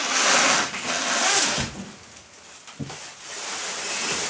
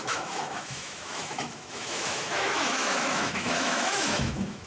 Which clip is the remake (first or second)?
second